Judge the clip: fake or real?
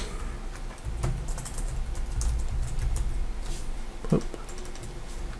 real